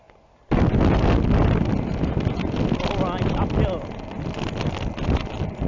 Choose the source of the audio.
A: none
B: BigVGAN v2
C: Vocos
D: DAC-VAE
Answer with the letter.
A